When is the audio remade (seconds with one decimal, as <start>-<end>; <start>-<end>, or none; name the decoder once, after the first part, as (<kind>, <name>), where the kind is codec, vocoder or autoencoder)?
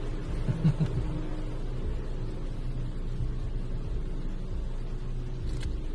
none